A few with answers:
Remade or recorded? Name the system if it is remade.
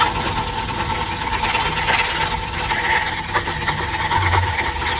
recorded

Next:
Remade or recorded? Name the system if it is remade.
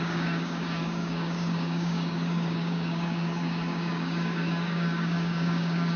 remade, codec, DAC